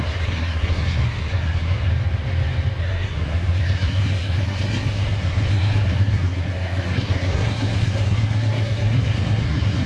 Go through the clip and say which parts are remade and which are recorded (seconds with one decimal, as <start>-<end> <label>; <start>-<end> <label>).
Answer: 0.0-1.9 remade; 1.9-2.8 recorded; 2.8-9.9 remade